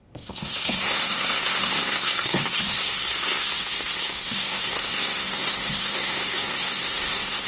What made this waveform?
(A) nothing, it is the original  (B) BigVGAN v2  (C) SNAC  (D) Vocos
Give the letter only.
C